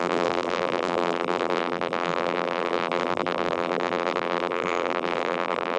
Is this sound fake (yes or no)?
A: yes